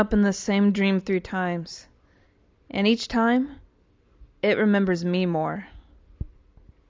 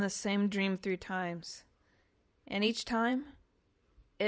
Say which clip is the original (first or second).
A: first